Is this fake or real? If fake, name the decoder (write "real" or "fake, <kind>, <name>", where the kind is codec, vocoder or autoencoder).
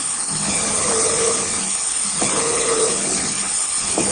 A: fake, codec, HILCodec